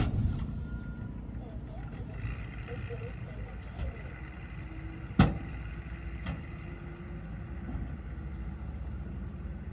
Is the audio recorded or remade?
recorded